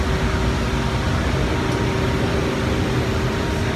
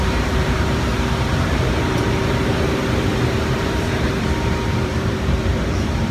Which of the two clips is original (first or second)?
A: first